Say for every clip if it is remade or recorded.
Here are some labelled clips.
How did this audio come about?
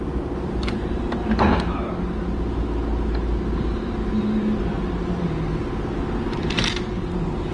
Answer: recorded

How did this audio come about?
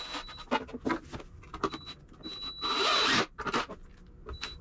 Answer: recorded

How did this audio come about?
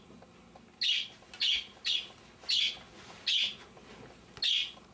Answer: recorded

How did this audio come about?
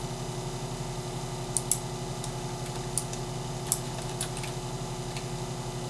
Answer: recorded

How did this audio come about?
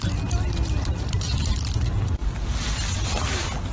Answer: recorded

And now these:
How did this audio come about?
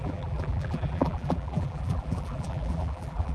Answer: remade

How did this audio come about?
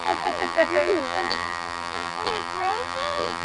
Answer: remade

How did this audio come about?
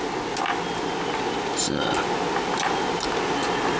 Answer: recorded